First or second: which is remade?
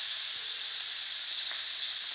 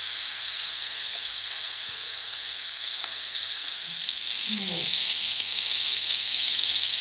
second